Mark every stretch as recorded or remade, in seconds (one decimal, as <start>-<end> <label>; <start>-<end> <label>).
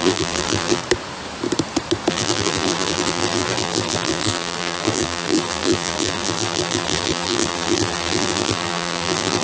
0.0-0.8 remade; 0.8-2.1 recorded; 2.1-9.4 remade